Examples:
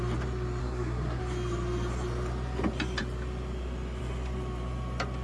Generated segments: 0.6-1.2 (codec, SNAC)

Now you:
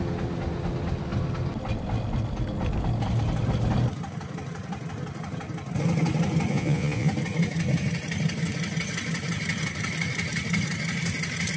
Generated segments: 6.5-7.1 (vocoder, Vocos)